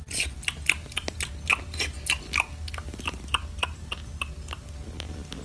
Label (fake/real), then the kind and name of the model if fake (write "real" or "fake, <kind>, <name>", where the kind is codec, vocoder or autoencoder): real